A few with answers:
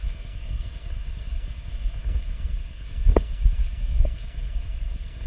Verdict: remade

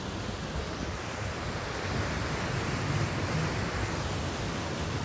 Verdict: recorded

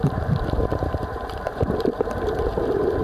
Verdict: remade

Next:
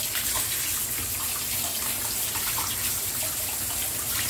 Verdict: recorded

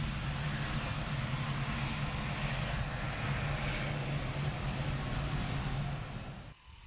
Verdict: recorded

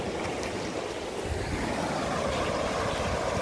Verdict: recorded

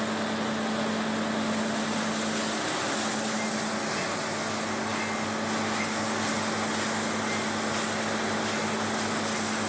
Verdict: recorded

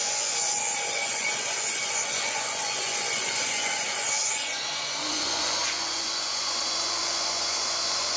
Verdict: remade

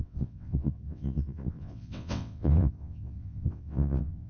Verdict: remade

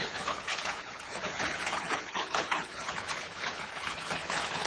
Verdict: remade